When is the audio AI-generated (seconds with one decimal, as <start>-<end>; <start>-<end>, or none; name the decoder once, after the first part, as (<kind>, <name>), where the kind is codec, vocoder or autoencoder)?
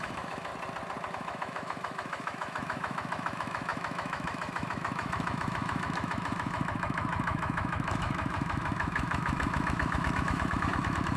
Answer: 0.0-0.5 (autoencoder, DAC-VAE); 1.1-11.2